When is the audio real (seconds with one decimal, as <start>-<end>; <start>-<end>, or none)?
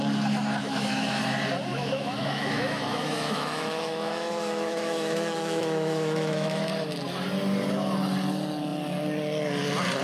0.0-0.6; 1.2-1.7; 6.7-10.0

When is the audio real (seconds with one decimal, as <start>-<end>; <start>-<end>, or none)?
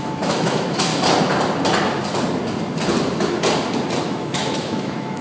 0.9-4.0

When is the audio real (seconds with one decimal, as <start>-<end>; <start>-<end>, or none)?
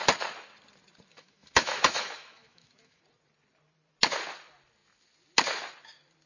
0.0-1.1; 3.0-6.3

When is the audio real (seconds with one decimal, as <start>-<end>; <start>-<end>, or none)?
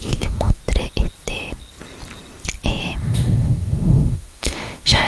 0.6-3.0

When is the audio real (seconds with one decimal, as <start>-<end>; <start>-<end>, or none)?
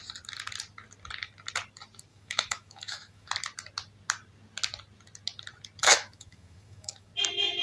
0.0-2.1; 3.3-5.8; 7.1-7.6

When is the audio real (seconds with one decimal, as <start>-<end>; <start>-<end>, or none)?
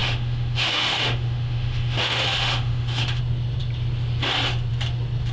3.2-5.3